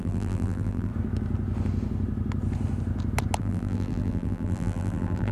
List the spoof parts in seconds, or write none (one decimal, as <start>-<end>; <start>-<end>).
0.0-0.9; 3.4-5.3